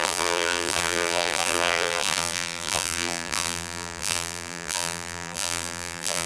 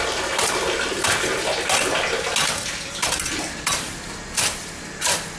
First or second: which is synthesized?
first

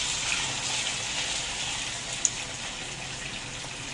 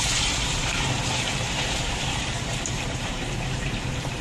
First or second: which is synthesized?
second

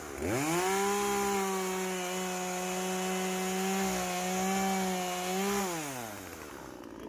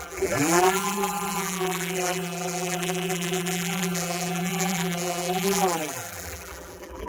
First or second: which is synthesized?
second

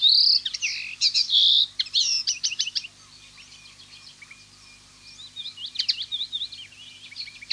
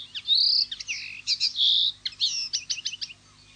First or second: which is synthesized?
first